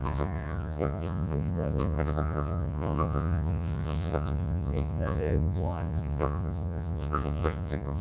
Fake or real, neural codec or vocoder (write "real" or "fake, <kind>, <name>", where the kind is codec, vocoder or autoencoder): fake, vocoder, Vocos